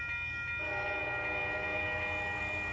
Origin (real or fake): real